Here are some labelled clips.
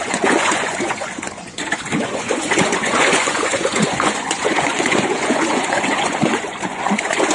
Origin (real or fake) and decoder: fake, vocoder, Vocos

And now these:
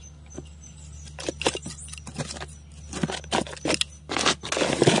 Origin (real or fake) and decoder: real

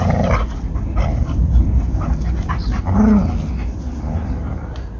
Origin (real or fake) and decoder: real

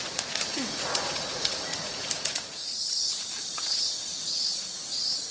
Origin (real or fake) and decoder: fake, vocoder, Vocos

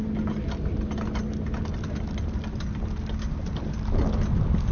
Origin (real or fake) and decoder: real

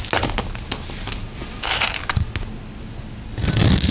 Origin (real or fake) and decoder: real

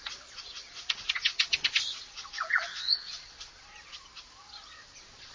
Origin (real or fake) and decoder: fake, vocoder, Vocos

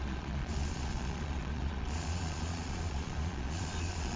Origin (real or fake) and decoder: fake, vocoder, Vocos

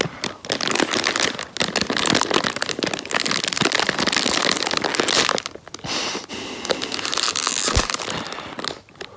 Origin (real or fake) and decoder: real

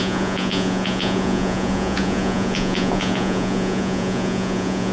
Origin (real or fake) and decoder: fake, vocoder, Vocos